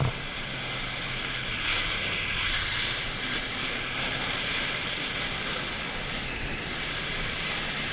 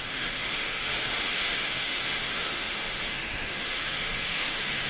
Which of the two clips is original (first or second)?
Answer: first